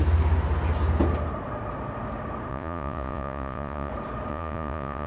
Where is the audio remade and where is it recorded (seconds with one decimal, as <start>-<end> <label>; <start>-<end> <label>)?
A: 0.0-2.5 recorded; 2.5-3.9 remade; 3.9-4.3 recorded; 4.3-5.1 remade

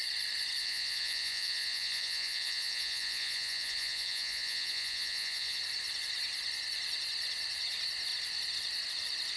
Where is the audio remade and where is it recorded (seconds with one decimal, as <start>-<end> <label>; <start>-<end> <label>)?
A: 0.0-0.6 recorded; 0.6-5.6 remade; 5.6-9.4 recorded

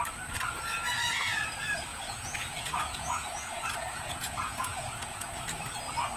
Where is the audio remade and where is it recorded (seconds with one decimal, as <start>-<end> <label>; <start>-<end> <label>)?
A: 0.0-1.9 recorded; 1.9-5.6 remade; 5.6-6.2 recorded

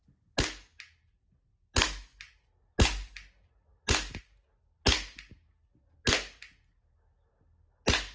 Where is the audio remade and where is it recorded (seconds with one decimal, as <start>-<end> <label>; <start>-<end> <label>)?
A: 0.0-8.1 recorded

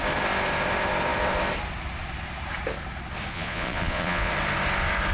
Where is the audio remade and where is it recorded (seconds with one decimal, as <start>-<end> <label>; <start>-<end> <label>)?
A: 0.0-3.3 recorded; 3.3-4.3 remade; 4.3-5.1 recorded

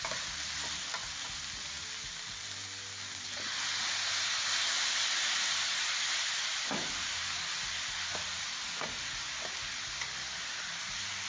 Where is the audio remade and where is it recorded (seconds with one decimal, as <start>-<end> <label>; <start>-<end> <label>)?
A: 0.0-11.3 recorded